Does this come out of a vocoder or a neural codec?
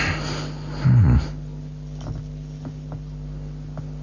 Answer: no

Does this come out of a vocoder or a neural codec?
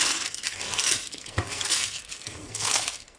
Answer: yes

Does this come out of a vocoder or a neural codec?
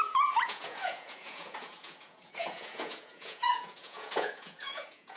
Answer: yes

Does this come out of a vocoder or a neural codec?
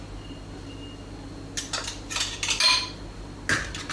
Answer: no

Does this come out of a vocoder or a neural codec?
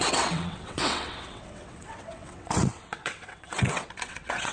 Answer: yes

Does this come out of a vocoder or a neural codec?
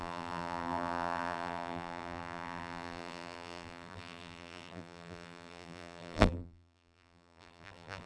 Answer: yes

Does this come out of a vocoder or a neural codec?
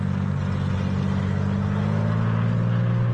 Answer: no